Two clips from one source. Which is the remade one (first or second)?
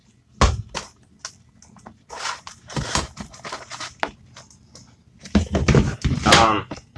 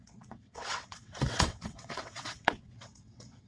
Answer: second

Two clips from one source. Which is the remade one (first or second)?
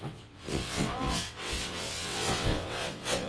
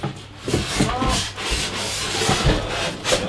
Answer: first